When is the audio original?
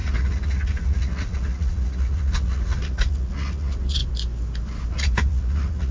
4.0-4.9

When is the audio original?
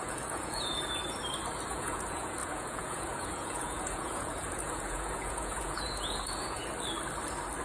1.0-1.7; 6.6-7.6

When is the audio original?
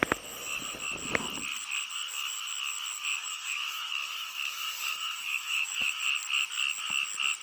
0.0-3.2; 6.0-7.4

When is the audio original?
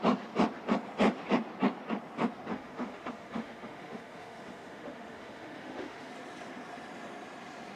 0.0-2.5; 6.1-7.8